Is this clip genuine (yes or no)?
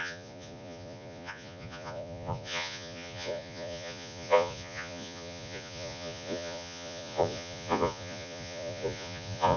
no